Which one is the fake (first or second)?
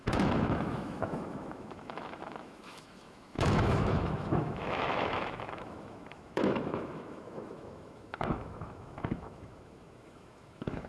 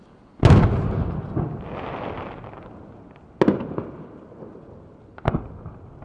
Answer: first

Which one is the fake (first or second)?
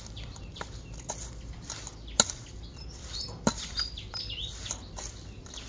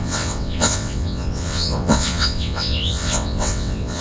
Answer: second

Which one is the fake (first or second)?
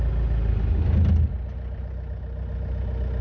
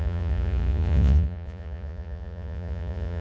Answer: second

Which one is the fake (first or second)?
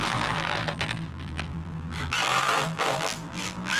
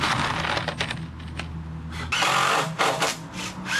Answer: first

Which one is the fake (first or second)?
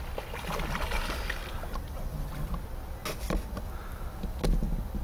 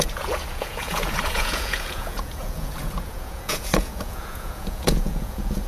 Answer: second